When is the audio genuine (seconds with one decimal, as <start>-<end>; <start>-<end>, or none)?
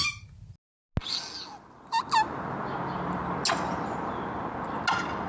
0.0-5.3